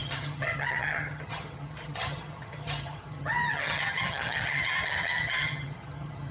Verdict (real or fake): fake